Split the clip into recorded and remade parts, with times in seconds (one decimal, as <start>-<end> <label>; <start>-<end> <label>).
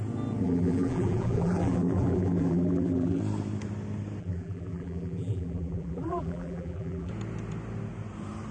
0.0-0.4 recorded; 0.4-3.2 remade; 3.2-4.2 recorded; 4.2-7.1 remade; 7.1-8.5 recorded